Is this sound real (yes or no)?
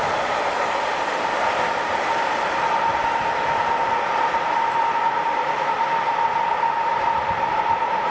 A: yes